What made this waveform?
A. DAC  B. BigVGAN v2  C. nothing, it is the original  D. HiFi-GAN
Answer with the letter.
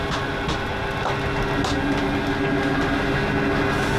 C